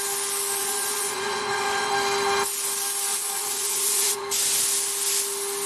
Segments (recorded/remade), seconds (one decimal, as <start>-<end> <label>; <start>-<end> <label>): 0.0-0.6 recorded; 0.6-1.9 remade; 1.9-3.1 recorded; 3.1-4.2 remade; 4.2-5.7 recorded